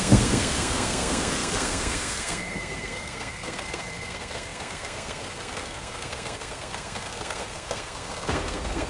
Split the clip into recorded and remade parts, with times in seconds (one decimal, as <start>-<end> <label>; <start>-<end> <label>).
0.0-8.9 remade